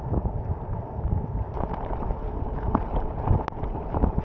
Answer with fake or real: real